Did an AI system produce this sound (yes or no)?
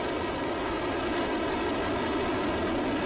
no